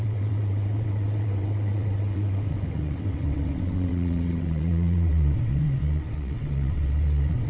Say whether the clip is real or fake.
fake